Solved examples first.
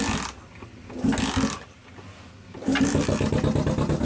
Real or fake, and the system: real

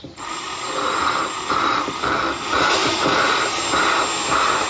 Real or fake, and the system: real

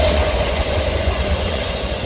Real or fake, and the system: fake, vocoder, Vocos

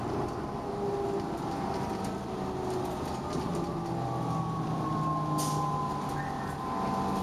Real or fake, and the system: real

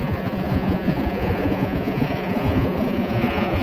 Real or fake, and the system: fake, vocoder, Vocos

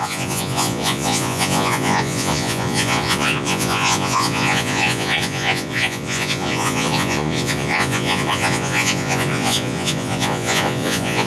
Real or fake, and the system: fake, vocoder, Vocos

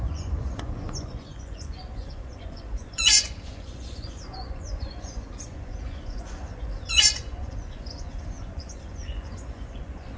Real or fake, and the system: fake, vocoder, Vocos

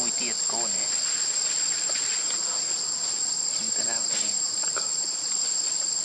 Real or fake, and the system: real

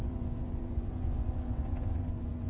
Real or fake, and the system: fake, vocoder, Vocos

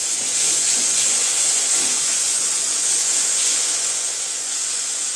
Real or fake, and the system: fake, vocoder, Vocos